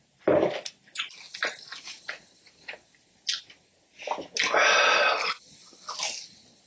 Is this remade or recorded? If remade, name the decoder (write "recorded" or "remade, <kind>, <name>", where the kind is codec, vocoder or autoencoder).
recorded